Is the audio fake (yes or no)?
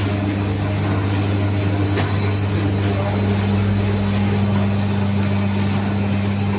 no